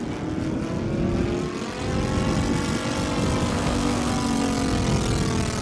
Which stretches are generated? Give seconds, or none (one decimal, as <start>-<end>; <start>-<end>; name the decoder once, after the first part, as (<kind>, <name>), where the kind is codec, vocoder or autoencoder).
3.5-4.1 (codec, SNAC)